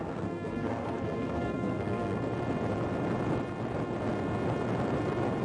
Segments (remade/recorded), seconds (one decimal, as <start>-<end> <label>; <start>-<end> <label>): 0.0-2.2 remade; 2.2-5.4 recorded